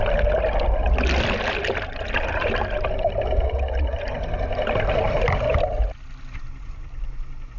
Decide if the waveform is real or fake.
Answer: real